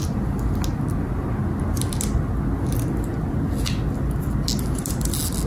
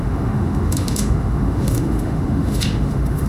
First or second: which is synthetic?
second